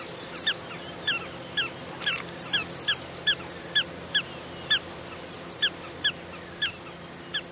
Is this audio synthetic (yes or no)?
no